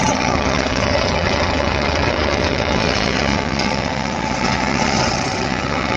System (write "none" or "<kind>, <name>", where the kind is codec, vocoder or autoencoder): vocoder, WaveNeXt